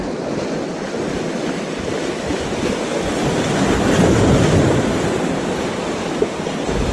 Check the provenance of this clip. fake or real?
real